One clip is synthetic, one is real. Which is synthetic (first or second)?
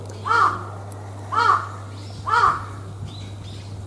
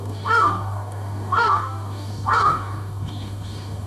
second